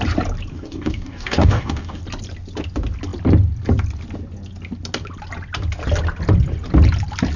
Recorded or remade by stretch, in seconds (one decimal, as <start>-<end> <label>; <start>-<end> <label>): 0.0-0.5 recorded; 0.5-2.0 remade; 2.0-7.4 recorded